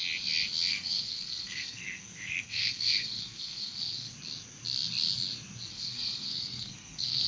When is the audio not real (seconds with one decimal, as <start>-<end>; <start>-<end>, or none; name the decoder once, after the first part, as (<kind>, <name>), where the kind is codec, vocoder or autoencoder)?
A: 0.7-4.1 (codec, SNAC); 5.7-7.3